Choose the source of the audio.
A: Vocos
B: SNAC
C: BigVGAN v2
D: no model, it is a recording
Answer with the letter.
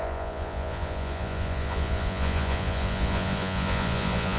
A